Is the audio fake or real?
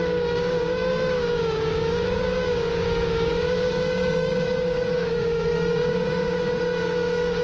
fake